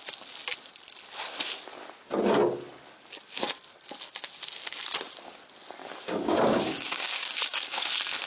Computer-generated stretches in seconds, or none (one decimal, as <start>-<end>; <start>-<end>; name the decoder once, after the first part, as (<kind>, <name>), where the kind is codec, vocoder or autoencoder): 5.8-7.8 (codec, DAC)